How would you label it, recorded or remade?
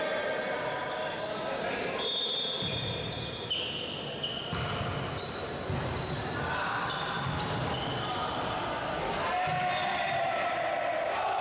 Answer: recorded